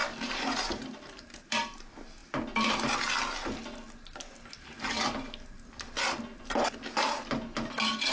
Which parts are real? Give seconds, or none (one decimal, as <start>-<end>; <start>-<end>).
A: 1.8-8.1